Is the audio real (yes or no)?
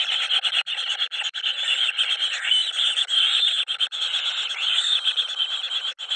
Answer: yes